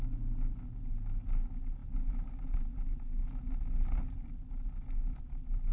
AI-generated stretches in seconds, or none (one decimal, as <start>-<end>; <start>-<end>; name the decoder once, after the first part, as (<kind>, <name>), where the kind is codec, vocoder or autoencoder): none

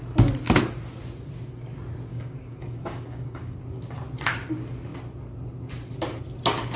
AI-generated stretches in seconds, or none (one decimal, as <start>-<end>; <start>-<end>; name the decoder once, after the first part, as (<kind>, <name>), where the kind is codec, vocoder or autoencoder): 2.1-3.6 (codec, DAC)

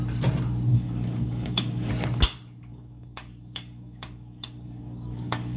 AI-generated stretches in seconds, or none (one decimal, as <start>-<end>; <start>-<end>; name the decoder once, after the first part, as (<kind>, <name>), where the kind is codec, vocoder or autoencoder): 0.7-1.9 (codec, DAC); 2.7-5.6

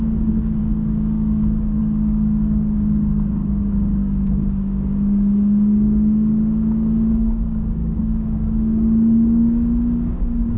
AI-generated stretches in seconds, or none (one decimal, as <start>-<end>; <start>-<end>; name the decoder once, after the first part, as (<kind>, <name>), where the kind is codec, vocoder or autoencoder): 0.0-10.6 (codec, DAC)

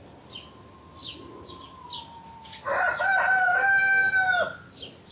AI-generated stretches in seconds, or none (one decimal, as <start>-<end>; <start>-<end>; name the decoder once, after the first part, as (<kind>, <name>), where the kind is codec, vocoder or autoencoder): none